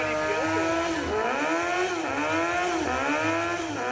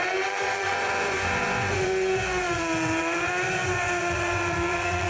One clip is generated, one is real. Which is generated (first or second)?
second